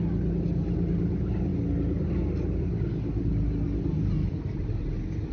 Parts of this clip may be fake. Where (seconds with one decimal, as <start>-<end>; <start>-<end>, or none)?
none